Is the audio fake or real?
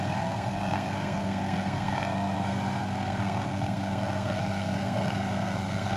fake